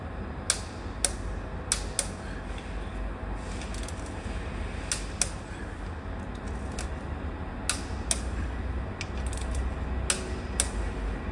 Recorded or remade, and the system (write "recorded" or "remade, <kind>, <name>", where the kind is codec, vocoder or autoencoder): recorded